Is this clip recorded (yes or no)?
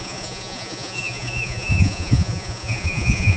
no